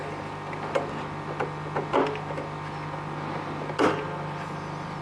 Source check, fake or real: real